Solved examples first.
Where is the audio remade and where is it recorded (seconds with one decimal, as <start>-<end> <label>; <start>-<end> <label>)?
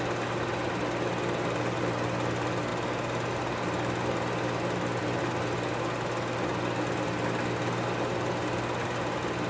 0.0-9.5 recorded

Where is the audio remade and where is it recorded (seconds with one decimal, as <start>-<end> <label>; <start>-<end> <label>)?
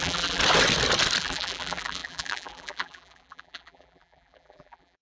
0.0-0.4 remade; 0.4-1.2 recorded; 1.2-5.0 remade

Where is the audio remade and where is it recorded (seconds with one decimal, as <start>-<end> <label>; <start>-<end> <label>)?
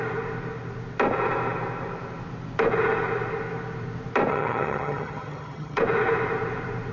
0.0-4.3 recorded; 4.3-5.8 remade; 5.8-6.9 recorded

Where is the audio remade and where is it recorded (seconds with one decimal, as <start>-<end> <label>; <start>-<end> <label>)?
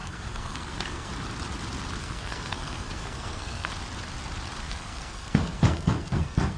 0.0-1.1 remade; 1.1-2.0 recorded; 2.0-3.7 remade; 3.7-4.6 recorded; 4.6-6.6 remade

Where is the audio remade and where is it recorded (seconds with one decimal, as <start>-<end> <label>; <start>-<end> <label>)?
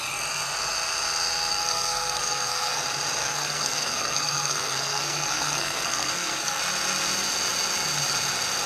0.0-1.5 recorded; 1.5-2.8 remade; 2.8-3.2 recorded; 3.2-6.6 remade; 6.6-8.7 recorded